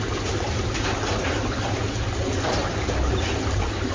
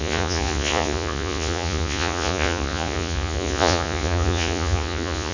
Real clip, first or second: first